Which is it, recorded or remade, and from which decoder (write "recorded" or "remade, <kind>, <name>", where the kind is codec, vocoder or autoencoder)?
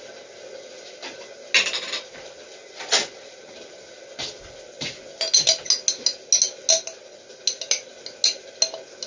recorded